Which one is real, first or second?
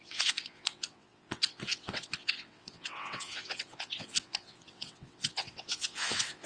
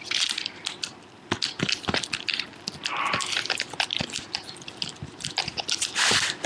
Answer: second